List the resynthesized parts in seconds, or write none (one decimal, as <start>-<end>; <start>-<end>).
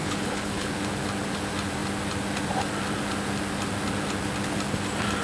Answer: 0.0-0.7